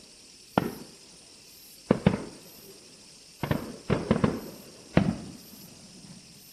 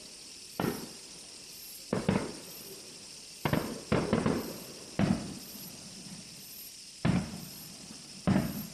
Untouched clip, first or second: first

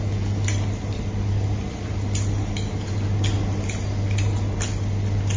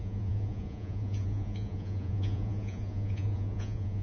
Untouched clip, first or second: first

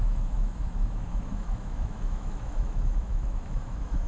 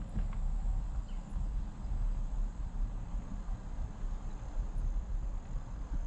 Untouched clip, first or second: second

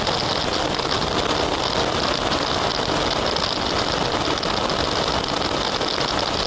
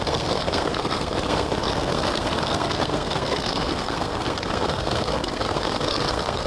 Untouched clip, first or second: first